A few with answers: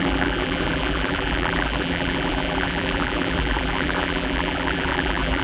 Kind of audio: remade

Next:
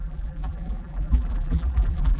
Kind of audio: remade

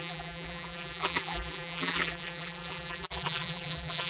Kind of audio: remade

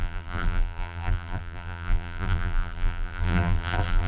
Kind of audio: remade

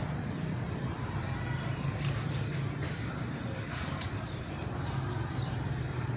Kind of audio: remade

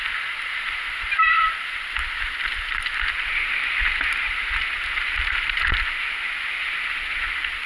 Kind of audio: remade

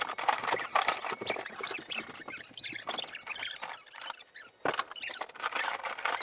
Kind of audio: recorded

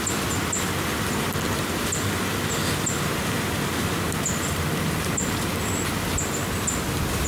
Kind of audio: recorded